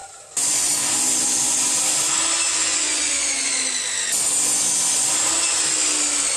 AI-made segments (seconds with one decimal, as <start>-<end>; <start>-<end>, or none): 2.7-3.6